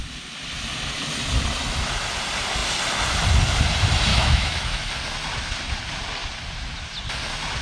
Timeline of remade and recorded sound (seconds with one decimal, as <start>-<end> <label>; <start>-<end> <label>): 0.0-4.1 recorded; 4.1-4.9 remade; 4.9-7.6 recorded